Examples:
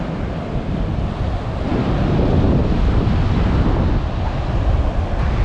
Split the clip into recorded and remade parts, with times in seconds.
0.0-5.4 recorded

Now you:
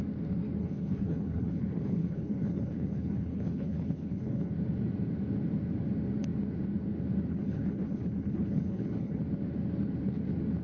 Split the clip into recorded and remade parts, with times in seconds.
0.0-0.6 recorded; 0.6-4.5 remade; 4.5-7.3 recorded; 7.3-9.2 remade; 9.2-10.6 recorded

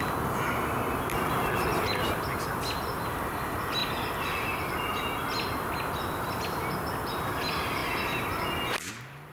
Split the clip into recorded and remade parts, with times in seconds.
0.0-9.3 recorded

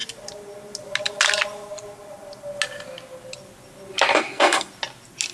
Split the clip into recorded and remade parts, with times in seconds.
0.0-4.1 recorded; 4.1-4.7 remade; 4.7-5.3 recorded

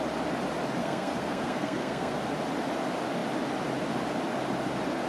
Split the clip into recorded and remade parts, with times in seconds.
0.0-0.8 recorded; 0.8-2.1 remade; 2.1-5.1 recorded

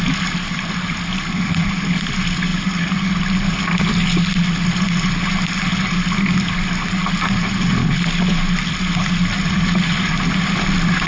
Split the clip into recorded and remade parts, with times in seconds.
0.0-11.1 recorded

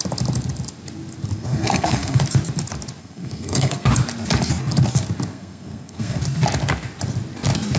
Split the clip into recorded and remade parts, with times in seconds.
0.0-1.4 recorded; 1.4-2.2 remade; 2.2-3.0 recorded; 3.0-3.9 remade; 3.9-5.3 recorded; 5.3-6.2 remade; 6.2-7.8 recorded

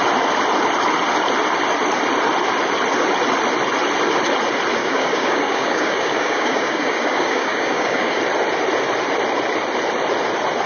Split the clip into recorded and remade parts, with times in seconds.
0.0-4.8 recorded; 4.8-8.2 remade; 8.2-10.7 recorded